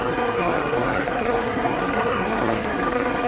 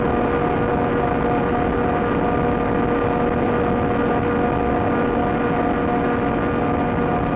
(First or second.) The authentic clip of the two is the second